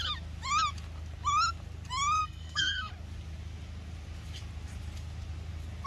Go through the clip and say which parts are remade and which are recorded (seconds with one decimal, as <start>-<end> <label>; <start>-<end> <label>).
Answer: 0.0-2.2 recorded; 2.2-2.9 remade; 2.9-5.9 recorded